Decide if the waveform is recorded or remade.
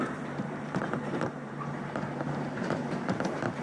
remade